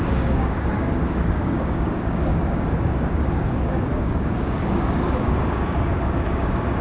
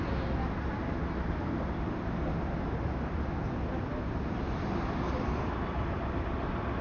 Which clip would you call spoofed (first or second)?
first